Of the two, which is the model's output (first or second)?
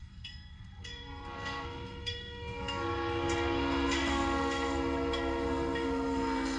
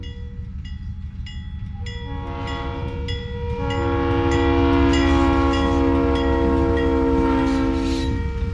first